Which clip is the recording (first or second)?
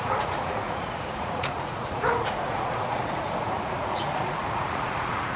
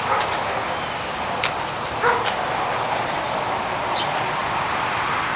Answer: second